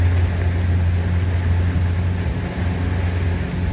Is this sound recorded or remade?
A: recorded